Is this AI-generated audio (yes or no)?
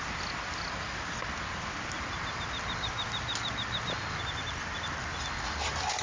no